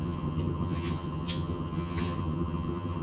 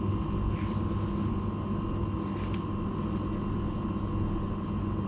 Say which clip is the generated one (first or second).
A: first